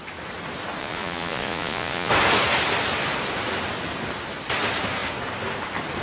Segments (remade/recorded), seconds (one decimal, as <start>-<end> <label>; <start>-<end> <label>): 0.0-0.8 recorded; 0.8-2.1 remade; 2.1-6.0 recorded